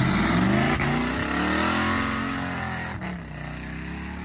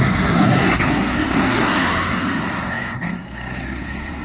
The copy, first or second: second